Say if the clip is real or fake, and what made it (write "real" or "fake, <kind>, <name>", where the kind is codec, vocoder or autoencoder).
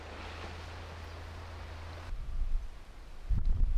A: real